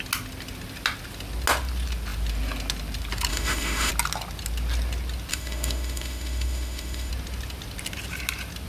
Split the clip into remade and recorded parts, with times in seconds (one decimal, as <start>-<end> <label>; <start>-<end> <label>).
0.0-3.3 recorded; 3.3-3.9 remade; 3.9-5.3 recorded; 5.3-7.1 remade; 7.1-8.7 recorded